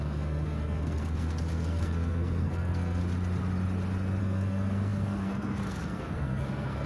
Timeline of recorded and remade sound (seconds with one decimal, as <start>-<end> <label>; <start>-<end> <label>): 0.0-3.0 remade; 3.0-4.2 recorded; 4.2-6.9 remade